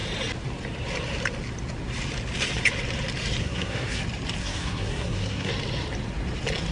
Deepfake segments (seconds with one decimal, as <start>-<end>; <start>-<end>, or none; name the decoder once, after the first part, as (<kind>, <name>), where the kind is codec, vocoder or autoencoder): 3.4-4.0 (codec, SNAC); 4.4-5.5